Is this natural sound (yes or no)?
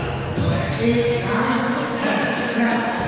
no